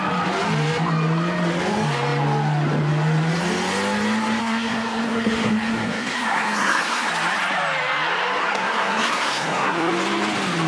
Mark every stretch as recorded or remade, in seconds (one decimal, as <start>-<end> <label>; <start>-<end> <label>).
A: 0.0-4.4 recorded; 4.4-7.1 remade; 7.1-8.4 recorded; 8.4-9.9 remade; 9.9-10.7 recorded